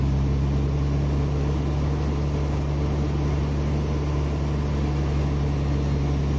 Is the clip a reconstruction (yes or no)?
no